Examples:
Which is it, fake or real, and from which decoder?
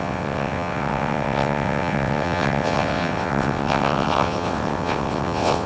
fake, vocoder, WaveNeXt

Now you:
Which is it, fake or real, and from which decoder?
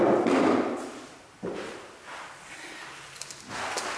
real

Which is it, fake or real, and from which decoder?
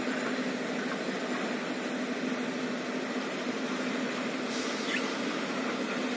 real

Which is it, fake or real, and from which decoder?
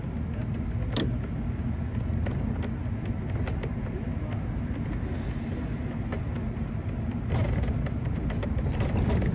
real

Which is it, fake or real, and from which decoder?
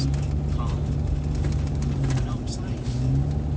real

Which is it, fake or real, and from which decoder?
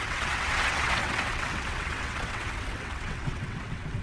fake, vocoder, WaveNeXt